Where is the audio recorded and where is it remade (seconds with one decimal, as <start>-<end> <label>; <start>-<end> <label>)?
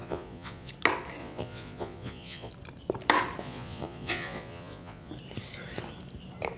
0.0-0.7 remade; 0.7-1.2 recorded; 1.2-2.5 remade; 2.5-3.4 recorded; 3.4-5.1 remade; 5.1-6.6 recorded